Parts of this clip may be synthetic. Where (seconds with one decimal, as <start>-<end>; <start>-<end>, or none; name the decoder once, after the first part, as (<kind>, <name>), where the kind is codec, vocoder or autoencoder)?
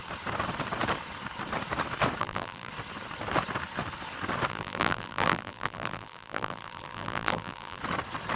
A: 2.2-2.7 (vocoder, BigVGAN v2); 4.5-7.8